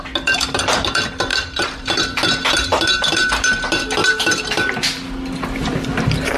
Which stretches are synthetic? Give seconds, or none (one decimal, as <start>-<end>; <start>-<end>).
none